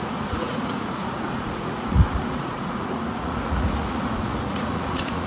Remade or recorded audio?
remade